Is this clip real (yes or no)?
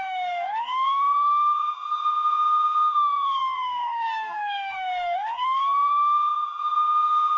no